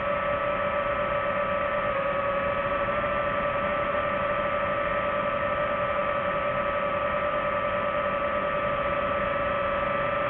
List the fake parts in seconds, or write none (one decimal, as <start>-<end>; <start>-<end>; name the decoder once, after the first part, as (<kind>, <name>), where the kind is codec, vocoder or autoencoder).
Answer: none